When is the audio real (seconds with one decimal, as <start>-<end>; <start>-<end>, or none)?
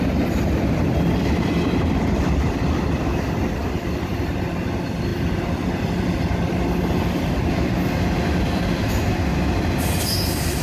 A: 0.0-10.6